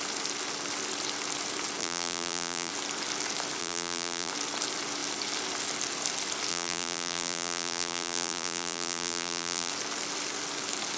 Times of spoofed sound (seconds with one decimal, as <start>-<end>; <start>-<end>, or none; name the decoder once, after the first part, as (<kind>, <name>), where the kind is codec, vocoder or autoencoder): 1.8-2.7 (vocoder, BigVGAN v2); 3.6-4.3; 6.5-9.7